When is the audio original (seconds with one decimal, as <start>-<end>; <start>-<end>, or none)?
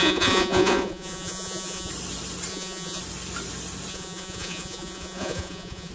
1.9-2.5; 3.0-3.9